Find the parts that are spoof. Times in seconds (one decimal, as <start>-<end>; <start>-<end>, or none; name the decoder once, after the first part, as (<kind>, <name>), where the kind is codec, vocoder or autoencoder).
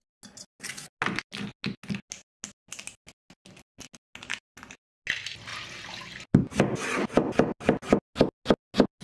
none